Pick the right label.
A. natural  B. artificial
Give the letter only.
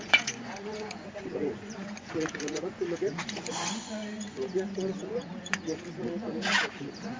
B